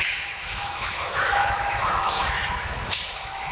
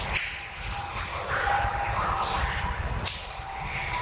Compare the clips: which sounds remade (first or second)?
first